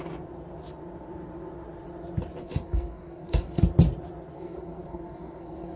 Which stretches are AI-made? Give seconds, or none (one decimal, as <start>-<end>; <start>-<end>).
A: 2.4-3.6; 4.3-5.8